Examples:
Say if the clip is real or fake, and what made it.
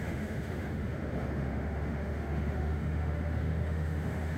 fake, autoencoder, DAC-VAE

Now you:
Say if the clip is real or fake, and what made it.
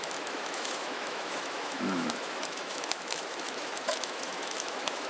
fake, autoencoder, DAC-VAE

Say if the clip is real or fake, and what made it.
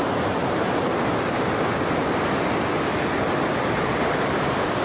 real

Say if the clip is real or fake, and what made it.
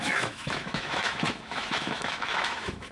fake, autoencoder, DAC-VAE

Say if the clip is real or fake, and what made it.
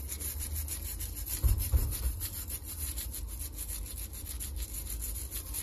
real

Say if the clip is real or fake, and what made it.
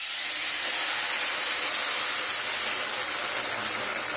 real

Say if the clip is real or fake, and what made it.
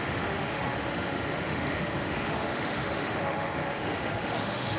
fake, autoencoder, DAC-VAE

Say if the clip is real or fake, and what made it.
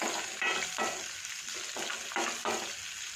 real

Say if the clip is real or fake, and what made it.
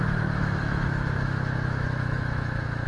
fake, autoencoder, DAC-VAE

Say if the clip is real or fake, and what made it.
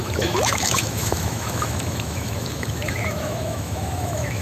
fake, autoencoder, DAC-VAE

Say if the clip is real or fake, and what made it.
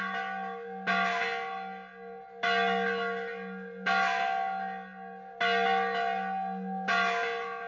real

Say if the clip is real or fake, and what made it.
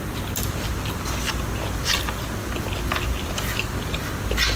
real